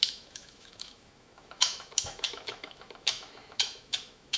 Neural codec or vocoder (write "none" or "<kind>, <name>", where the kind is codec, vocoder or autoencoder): autoencoder, DAC-VAE